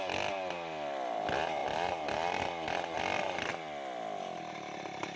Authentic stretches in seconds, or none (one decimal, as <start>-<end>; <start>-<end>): 0.0-5.2